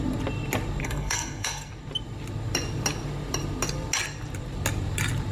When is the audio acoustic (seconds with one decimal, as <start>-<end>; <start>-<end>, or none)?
0.0-0.8; 1.7-5.3